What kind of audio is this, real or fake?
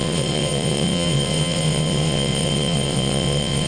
fake